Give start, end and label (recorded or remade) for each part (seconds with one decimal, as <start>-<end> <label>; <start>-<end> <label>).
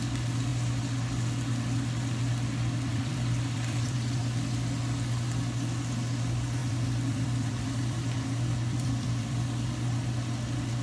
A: 0.0-2.9 recorded; 2.9-4.2 remade; 4.2-6.6 recorded; 6.6-9.7 remade; 9.7-10.8 recorded